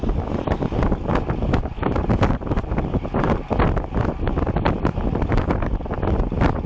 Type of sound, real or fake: real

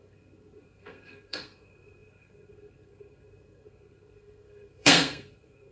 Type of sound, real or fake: fake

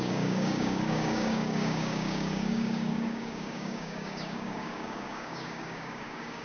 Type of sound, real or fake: fake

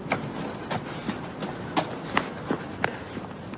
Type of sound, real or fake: real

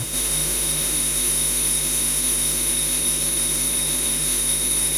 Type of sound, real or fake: fake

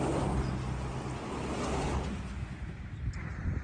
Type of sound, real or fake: real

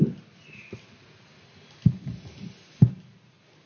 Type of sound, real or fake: real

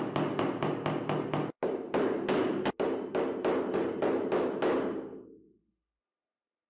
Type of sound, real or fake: real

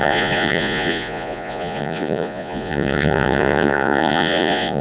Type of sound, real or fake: fake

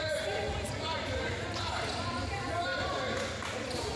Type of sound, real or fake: real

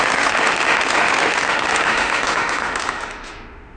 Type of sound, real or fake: fake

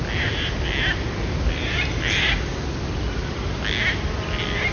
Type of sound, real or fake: real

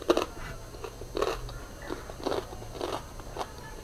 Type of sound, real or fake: real